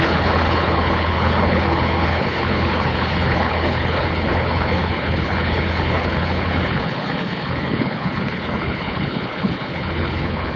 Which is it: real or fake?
fake